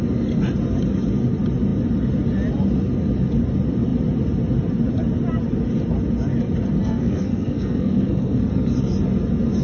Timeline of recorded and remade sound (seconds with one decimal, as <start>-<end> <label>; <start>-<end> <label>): 0.0-6.8 recorded; 6.8-8.5 remade; 8.5-9.6 recorded